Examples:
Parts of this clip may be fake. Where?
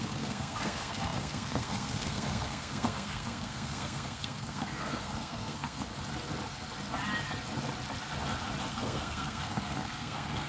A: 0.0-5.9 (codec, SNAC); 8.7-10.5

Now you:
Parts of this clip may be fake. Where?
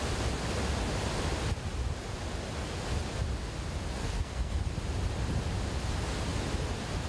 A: 4.0-4.6 (codec, SNAC)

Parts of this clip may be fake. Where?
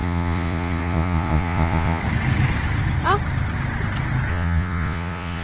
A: 0.0-2.0 (vocoder, Vocos); 4.3-5.4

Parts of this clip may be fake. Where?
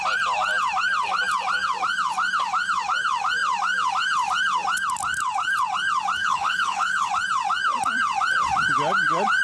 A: 6.2-7.1 (codec, HILCodec)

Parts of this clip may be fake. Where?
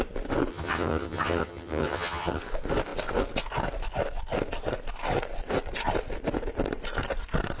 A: 0.5-2.4 (vocoder, HiFi-GAN)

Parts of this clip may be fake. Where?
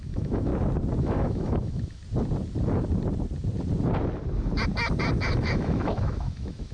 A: 0.0-0.5 (autoencoder, DAC-VAE); 1.0-2.0; 5.2-6.7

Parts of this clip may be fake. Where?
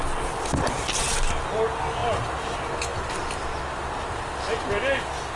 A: none